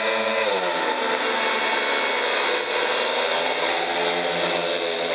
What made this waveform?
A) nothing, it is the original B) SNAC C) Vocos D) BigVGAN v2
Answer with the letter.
A